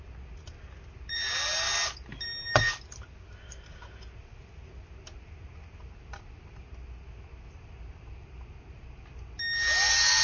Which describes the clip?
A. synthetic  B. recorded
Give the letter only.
B